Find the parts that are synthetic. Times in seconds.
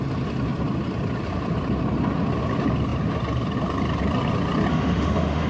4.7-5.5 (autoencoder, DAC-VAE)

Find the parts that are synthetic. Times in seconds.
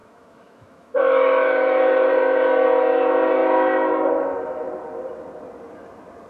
0.0-2.1 (autoencoder, DAC-VAE)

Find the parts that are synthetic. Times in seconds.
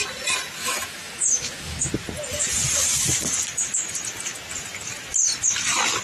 0.6-1.9 (autoencoder, DAC-VAE)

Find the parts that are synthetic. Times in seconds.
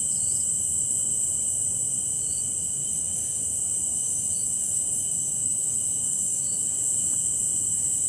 2.8-3.4 (autoencoder, DAC-VAE); 3.9-6.8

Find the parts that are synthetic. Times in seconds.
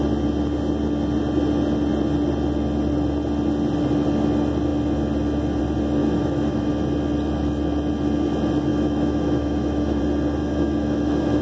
6.0-6.7 (autoencoder, DAC-VAE); 8.7-10.0; 10.4-11.4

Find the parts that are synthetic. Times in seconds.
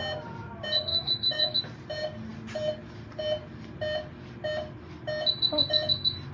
0.9-1.6 (autoencoder, DAC-VAE)